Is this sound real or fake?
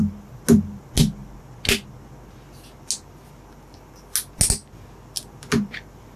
real